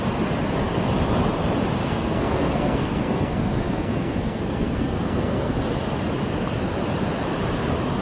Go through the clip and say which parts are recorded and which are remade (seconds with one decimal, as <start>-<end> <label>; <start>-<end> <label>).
0.0-1.8 recorded; 1.8-5.6 remade; 5.6-8.0 recorded